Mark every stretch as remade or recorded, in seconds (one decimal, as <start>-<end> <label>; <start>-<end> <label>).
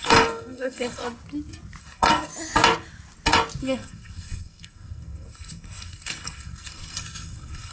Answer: 0.0-1.0 remade; 1.0-1.8 recorded; 1.8-2.3 remade; 2.3-3.6 recorded; 3.6-7.7 remade